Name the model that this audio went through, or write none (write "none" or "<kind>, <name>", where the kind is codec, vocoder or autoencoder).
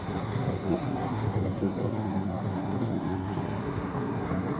codec, SNAC